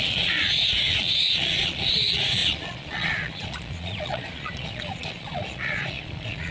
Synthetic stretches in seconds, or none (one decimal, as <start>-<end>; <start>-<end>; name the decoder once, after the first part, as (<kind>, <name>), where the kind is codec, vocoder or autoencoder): 0.0-6.5 (vocoder, Vocos)